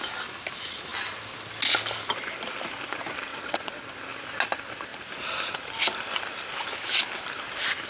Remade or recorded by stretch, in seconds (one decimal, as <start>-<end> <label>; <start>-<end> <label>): 0.0-3.3 recorded; 3.3-3.9 remade; 3.9-7.9 recorded